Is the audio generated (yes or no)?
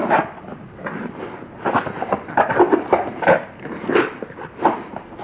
no